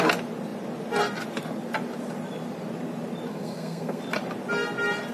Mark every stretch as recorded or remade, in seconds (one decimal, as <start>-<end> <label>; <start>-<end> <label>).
0.0-3.3 recorded; 3.3-4.0 remade; 4.0-5.1 recorded